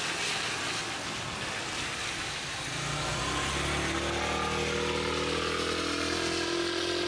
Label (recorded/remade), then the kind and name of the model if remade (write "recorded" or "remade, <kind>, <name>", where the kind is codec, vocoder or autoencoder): recorded